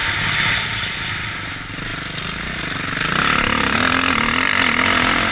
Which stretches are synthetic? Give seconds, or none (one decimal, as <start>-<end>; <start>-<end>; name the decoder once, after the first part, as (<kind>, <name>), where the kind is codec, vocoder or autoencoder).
none